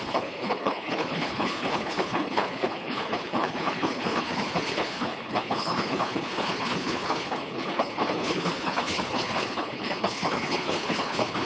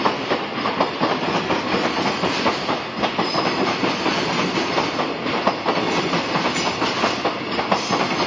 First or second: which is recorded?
second